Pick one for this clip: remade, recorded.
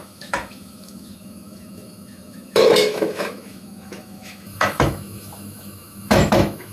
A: remade